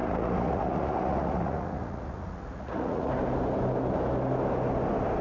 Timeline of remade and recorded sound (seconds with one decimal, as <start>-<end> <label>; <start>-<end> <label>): 0.0-3.1 remade; 3.1-5.2 recorded